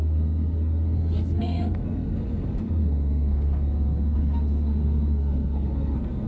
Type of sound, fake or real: fake